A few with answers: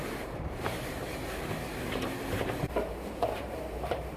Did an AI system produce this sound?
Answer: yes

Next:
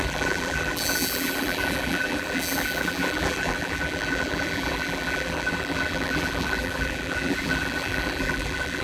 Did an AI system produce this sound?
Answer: yes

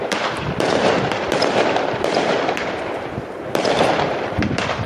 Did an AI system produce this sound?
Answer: yes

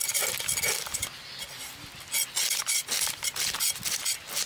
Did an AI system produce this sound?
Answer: no